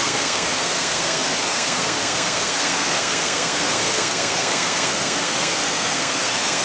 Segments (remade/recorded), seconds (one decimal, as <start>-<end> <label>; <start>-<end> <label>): 0.0-6.6 remade